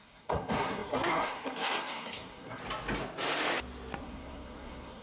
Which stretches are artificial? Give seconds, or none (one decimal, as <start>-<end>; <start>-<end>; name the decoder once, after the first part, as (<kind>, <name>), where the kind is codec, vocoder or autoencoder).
0.0-2.6 (codec, SNAC); 4.0-5.0